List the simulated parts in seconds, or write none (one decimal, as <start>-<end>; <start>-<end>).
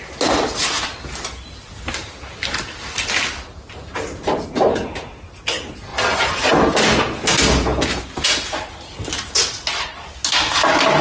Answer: 7.7-8.5